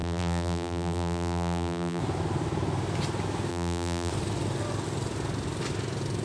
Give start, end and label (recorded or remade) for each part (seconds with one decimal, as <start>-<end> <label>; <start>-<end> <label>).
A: 0.0-2.0 remade; 2.0-3.5 recorded; 3.5-4.1 remade; 4.1-6.2 recorded